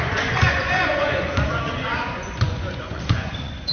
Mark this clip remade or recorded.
remade